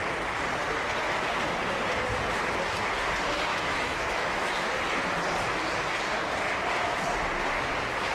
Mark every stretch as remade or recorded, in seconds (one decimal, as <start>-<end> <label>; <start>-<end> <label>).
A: 0.0-3.5 recorded; 3.5-4.7 remade; 4.7-8.1 recorded